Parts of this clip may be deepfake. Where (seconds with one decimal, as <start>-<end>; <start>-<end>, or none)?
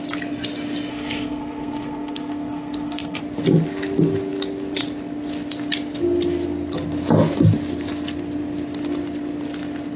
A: 0.9-3.2